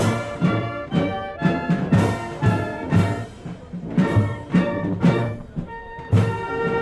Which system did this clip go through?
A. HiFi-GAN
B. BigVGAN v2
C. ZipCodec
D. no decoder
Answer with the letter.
B